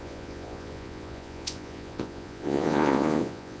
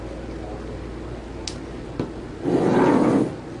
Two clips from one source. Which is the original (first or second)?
second